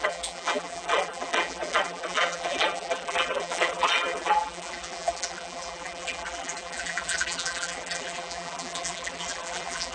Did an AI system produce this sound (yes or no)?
yes